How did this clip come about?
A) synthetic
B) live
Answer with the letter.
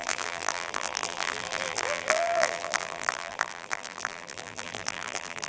A